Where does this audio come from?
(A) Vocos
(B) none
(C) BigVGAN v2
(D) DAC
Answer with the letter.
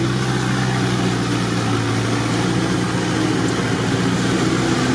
B